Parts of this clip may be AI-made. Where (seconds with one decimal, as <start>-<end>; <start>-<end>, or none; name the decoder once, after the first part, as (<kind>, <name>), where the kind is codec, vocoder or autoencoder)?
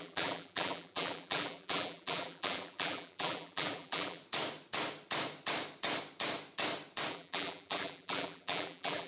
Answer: 0.0-4.2 (vocoder, BigVGAN v2); 7.1-9.1